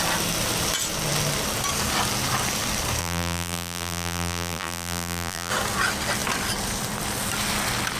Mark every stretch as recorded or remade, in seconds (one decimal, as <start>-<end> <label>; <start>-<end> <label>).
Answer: 0.0-3.0 recorded; 3.0-5.5 remade; 5.5-8.0 recorded